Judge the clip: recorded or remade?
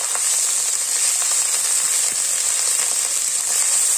recorded